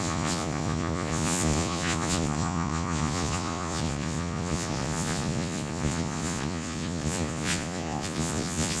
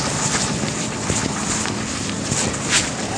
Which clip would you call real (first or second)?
second